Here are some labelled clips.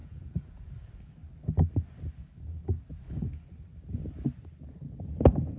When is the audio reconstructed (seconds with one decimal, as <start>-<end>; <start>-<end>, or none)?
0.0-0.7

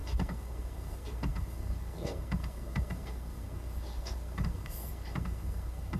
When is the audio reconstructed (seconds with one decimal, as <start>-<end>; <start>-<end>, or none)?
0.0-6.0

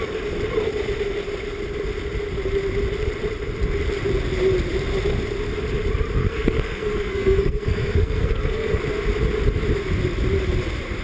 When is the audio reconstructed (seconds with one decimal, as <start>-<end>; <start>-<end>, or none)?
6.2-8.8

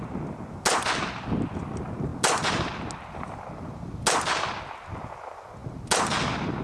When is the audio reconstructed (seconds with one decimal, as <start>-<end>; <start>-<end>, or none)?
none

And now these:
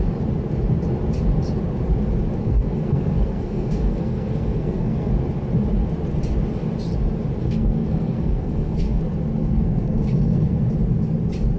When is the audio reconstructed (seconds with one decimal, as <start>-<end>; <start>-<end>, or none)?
2.4-5.1; 7.4-9.0; 9.4-10.7

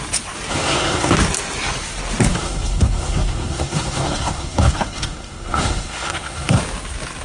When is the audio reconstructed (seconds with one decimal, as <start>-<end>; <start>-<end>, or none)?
0.5-1.1; 2.3-6.6

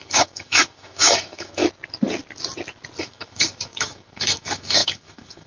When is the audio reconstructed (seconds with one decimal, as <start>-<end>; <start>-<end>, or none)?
0.0-1.6; 3.0-5.5

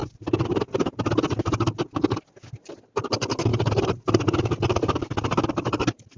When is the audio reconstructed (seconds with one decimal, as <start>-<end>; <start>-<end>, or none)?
none